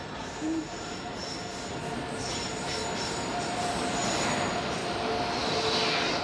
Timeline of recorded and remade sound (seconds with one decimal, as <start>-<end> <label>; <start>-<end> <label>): 0.0-1.2 remade; 1.2-2.4 recorded; 2.4-4.8 remade; 4.8-6.2 recorded